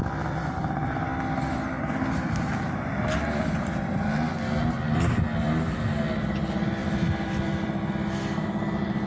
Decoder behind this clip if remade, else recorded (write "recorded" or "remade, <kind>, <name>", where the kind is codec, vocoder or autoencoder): recorded